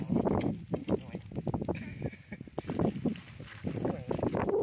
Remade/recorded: recorded